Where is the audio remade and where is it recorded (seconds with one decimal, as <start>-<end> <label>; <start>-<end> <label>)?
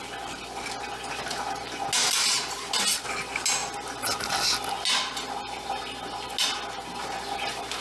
0.0-7.8 recorded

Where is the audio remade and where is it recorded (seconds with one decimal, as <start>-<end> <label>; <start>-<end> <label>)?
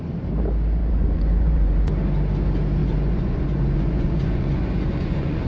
0.0-0.8 recorded; 0.8-1.9 remade; 1.9-2.8 recorded; 2.8-5.5 remade